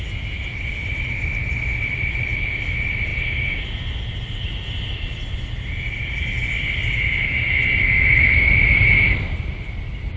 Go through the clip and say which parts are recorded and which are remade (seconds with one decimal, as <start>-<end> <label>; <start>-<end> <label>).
0.0-10.2 recorded